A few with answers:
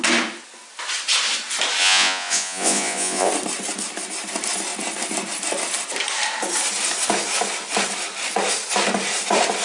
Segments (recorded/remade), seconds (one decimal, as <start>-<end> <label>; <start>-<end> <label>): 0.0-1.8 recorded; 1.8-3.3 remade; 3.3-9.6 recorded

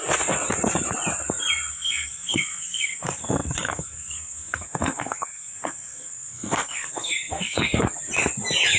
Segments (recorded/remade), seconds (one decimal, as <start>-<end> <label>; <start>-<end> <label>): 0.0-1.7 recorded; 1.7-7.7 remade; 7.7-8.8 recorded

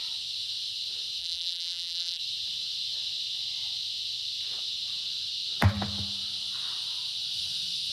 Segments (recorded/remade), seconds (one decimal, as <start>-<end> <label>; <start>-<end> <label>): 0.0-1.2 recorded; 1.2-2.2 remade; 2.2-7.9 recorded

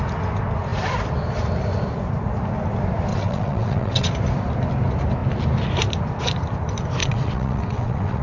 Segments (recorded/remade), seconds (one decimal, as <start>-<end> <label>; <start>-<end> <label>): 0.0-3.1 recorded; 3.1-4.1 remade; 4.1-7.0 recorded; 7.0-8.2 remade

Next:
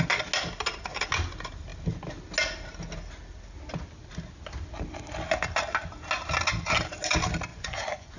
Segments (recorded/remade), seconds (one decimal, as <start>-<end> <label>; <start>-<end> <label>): 0.0-7.5 recorded; 7.5-8.2 remade